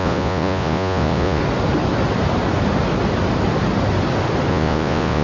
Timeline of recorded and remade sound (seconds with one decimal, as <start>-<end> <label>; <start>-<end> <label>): 0.0-1.4 remade; 1.4-4.5 recorded; 4.5-5.2 remade